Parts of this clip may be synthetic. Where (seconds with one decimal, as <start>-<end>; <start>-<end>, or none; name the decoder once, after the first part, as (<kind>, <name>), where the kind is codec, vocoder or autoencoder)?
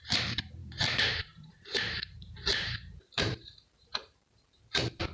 0.0-5.1 (vocoder, BigVGAN v2)